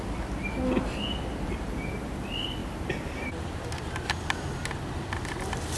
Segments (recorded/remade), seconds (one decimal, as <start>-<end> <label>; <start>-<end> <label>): 0.0-5.8 recorded